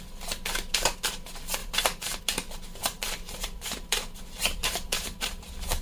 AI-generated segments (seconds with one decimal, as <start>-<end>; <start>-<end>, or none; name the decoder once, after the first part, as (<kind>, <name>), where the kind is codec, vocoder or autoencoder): 1.6-2.2 (vocoder, BigVGAN v2); 2.8-5.8